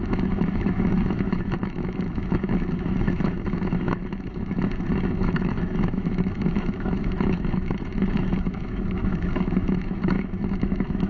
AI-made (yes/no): yes